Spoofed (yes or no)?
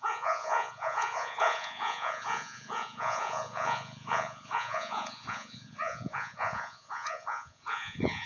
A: yes